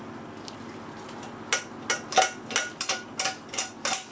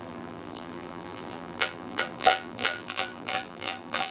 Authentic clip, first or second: first